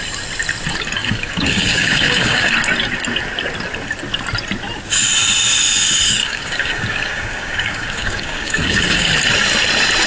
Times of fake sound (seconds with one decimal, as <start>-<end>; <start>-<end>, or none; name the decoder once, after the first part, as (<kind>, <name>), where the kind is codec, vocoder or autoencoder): 1.0-2.5 (codec, DAC); 6.2-9.1